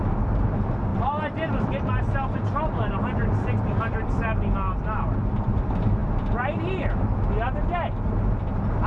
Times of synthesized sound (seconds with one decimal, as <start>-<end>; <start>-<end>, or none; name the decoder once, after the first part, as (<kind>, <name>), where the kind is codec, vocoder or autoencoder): none